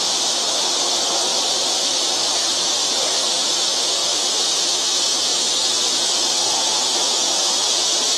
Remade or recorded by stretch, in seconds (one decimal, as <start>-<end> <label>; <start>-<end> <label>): 0.0-1.3 remade; 1.3-1.8 recorded; 1.8-8.2 remade